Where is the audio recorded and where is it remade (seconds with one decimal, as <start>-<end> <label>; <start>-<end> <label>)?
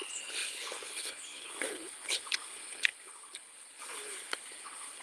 0.0-5.0 remade